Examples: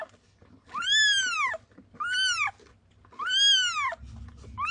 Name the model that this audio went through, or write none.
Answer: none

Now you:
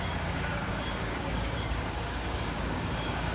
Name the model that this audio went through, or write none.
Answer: codec, DAC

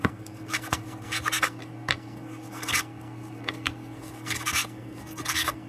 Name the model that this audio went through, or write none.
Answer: codec, SNAC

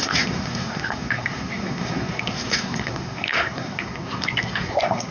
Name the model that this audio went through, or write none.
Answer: codec, SNAC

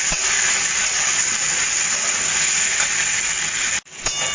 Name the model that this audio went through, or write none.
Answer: none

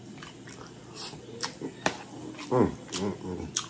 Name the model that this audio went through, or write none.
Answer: none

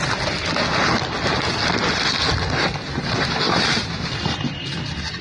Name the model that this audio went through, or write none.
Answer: none